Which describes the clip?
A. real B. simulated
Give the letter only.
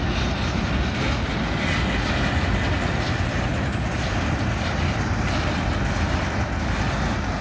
A